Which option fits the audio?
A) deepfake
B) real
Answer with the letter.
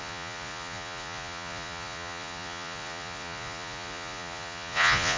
A